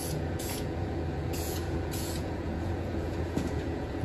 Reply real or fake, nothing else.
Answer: fake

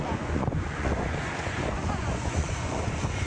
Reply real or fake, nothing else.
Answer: fake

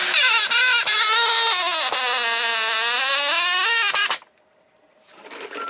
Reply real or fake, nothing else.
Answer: real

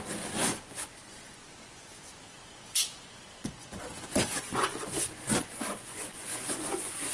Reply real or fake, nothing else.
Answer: fake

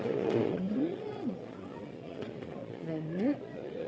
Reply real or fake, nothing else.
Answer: fake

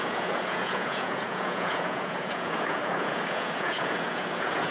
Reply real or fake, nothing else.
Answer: fake